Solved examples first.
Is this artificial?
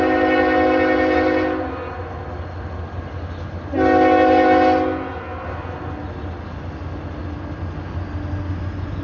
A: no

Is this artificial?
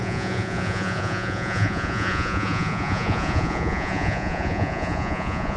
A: yes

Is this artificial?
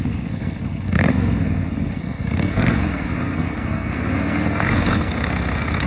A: yes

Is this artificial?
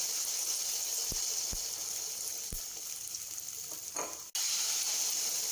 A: no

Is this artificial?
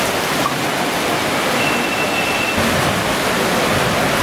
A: no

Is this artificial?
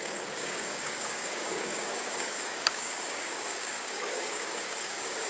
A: yes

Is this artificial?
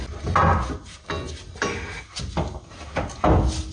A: no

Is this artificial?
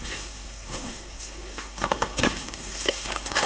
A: yes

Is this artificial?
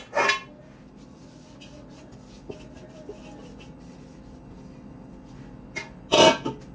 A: no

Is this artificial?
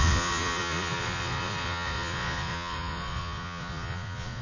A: yes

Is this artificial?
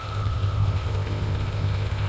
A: yes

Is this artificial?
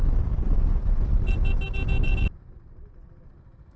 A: no